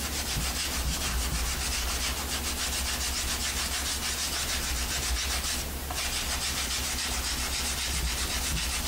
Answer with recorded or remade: recorded